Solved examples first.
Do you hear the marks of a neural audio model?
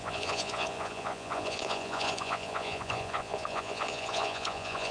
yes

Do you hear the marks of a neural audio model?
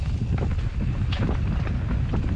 no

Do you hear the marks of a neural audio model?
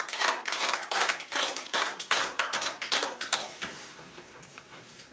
yes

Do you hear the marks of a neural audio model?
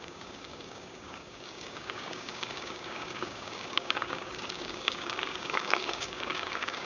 yes